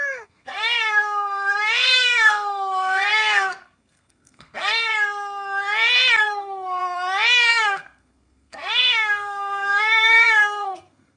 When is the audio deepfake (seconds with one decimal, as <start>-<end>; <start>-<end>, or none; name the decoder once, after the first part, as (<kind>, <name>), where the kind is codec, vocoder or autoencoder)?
0.0-4.9 (codec, SNAC); 6.2-6.8; 7.5-11.2